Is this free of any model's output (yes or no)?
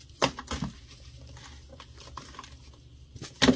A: yes